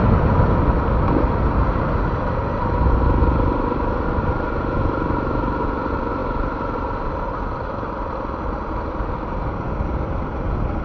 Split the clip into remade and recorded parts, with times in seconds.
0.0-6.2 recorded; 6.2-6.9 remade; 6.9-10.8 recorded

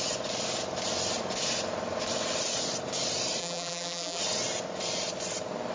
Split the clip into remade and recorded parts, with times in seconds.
0.0-3.4 recorded; 3.4-4.2 remade; 4.2-5.7 recorded

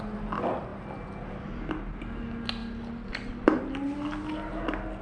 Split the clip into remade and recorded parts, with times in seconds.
0.0-2.6 recorded; 2.6-3.6 remade; 3.6-5.0 recorded

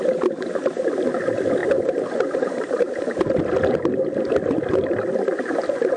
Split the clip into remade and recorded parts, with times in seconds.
0.0-1.6 recorded; 1.6-3.5 remade; 3.5-6.0 recorded

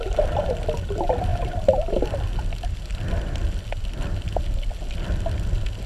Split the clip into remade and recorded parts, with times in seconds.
0.0-1.3 recorded; 1.3-2.2 remade; 2.2-5.9 recorded

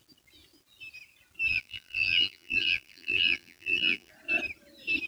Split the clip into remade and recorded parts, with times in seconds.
0.0-1.5 recorded; 1.5-4.1 remade; 4.1-5.1 recorded

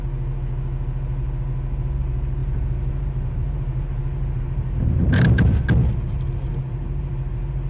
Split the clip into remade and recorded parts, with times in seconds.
0.0-2.4 recorded; 2.4-5.6 remade; 5.6-6.5 recorded; 6.5-7.7 remade

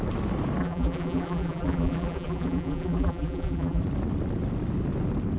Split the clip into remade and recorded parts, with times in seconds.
0.0-0.6 recorded; 0.6-3.8 remade; 3.8-5.4 recorded